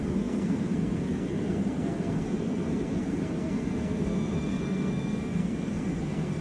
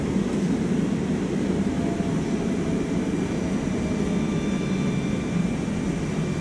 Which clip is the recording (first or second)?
second